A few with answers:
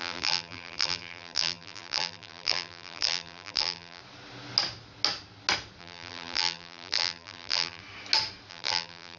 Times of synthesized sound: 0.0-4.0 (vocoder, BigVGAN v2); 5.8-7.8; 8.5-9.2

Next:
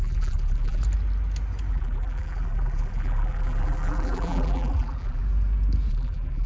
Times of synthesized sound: 0.0-0.8 (vocoder, BigVGAN v2); 1.7-5.2; 5.9-6.5

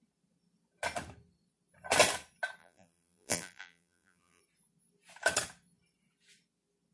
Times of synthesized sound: 2.6-4.4 (vocoder, BigVGAN v2)

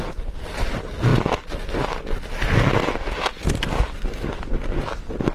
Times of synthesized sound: none